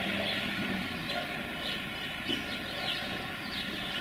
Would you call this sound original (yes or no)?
yes